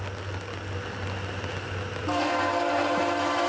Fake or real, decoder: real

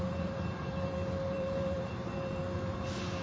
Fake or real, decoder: fake, vocoder, BigVGAN v2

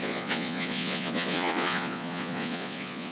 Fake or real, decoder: fake, vocoder, Vocos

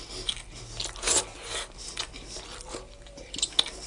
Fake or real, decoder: real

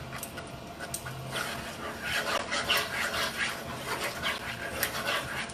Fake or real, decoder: real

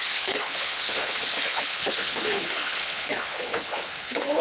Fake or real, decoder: fake, codec, HILCodec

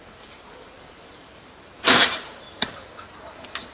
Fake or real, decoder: fake, vocoder, BigVGAN v2